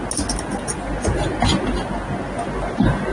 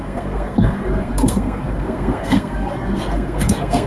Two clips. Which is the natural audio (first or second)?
first